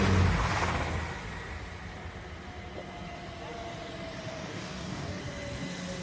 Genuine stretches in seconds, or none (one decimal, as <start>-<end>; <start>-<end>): 0.0-4.3; 5.2-6.0